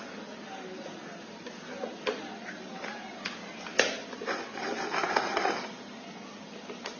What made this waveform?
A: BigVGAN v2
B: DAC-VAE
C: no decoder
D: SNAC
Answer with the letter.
C